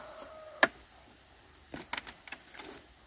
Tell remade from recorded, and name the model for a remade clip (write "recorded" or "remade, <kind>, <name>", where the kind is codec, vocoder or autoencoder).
recorded